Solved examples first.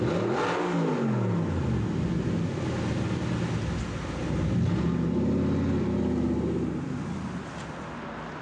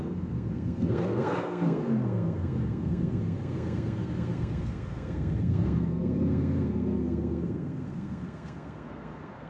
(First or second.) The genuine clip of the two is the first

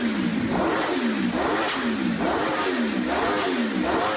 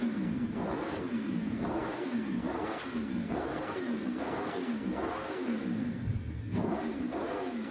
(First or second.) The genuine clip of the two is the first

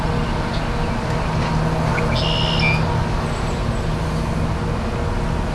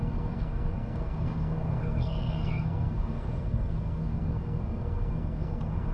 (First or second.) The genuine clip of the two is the first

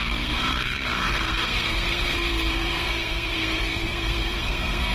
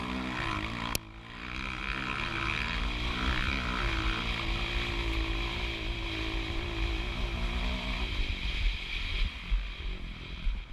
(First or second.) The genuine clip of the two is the second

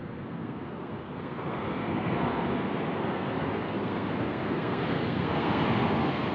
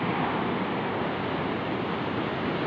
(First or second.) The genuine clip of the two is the second